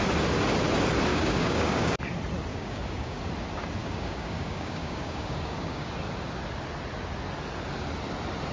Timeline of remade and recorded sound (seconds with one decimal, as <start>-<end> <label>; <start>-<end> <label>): 0.0-1.1 recorded; 1.1-2.0 remade; 2.0-2.5 recorded; 2.5-3.2 remade; 3.2-3.8 recorded; 3.8-5.9 remade; 5.9-8.5 recorded

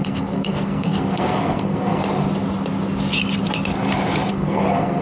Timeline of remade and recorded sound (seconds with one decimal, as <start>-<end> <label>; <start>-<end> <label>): 0.0-2.0 remade; 2.0-4.3 recorded; 4.3-5.0 remade

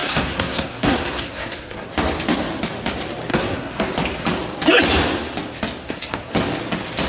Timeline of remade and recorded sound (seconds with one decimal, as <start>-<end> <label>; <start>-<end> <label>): 0.0-1.9 remade; 1.9-3.3 recorded; 3.3-3.8 remade; 3.8-5.8 recorded; 5.8-6.3 remade; 6.3-7.1 recorded

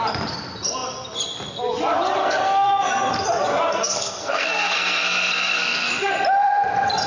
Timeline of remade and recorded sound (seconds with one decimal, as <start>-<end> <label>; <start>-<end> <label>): 0.0-2.2 recorded; 2.2-3.1 remade; 3.1-3.7 recorded; 3.7-6.1 remade; 6.1-7.1 recorded

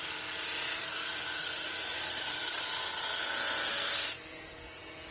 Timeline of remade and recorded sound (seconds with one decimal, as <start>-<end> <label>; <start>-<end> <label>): 0.0-0.8 recorded; 0.8-2.6 remade; 2.6-3.7 recorded; 3.7-4.2 remade; 4.2-5.1 recorded

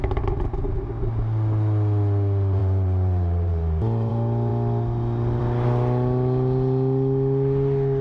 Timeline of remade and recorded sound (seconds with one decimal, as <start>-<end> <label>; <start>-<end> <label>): 0.0-2.6 recorded; 2.6-4.1 remade; 4.1-8.0 recorded

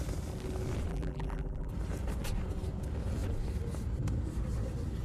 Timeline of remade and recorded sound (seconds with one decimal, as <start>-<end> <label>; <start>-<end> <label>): 0.0-0.9 recorded; 0.9-1.7 remade; 1.7-5.0 recorded

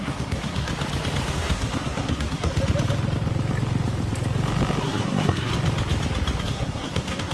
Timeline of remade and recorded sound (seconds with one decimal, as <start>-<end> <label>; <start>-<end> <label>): 0.0-0.7 remade; 0.7-1.3 recorded; 1.3-2.5 remade; 2.5-4.8 recorded; 4.8-5.5 remade; 5.5-6.4 recorded; 6.4-7.3 remade